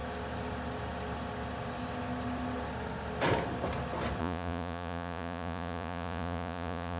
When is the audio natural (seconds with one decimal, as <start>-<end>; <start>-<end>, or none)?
0.0-4.2